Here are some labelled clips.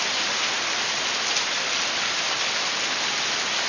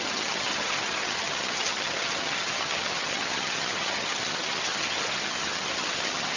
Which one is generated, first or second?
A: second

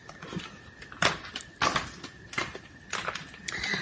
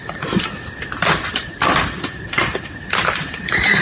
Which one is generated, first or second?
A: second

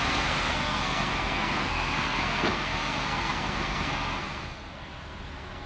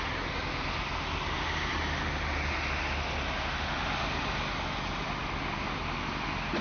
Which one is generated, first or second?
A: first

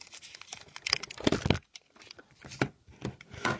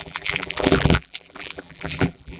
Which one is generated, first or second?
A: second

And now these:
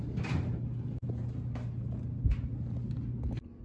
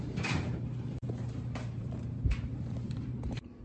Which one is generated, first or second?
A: second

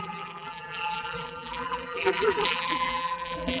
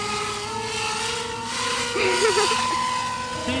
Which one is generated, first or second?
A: first